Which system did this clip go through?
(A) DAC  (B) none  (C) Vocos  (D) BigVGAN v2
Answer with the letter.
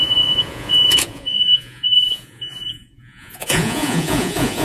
C